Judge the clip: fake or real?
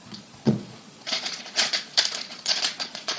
fake